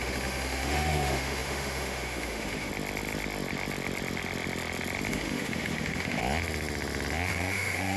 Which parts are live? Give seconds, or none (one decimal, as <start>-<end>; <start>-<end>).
2.7-5.1; 6.2-7.3